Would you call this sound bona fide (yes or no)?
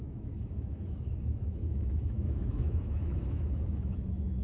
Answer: no